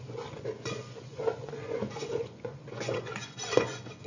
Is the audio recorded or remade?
remade